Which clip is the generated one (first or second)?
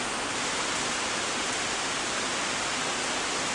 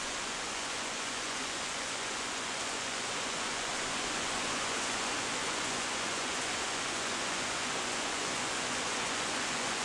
second